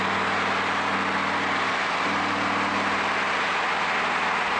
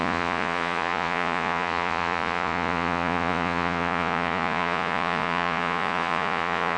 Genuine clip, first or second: first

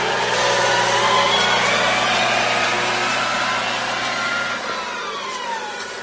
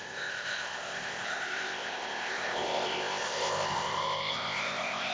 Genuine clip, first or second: first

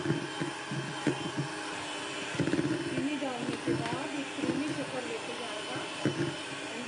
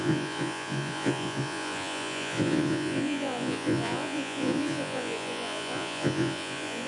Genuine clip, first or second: first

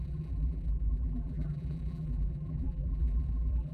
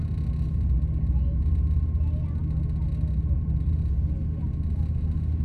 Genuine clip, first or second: second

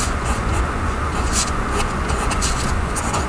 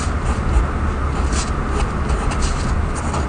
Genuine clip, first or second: second